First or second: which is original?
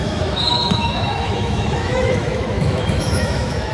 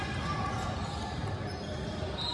second